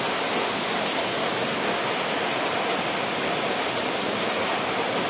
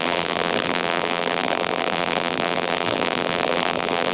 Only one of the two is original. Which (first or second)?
first